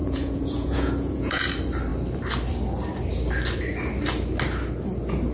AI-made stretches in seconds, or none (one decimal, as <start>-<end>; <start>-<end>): 0.0-1.4